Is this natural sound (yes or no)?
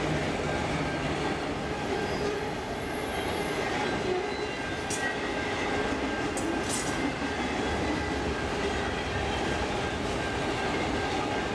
yes